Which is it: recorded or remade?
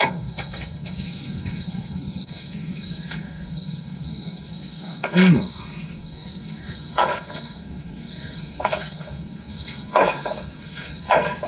remade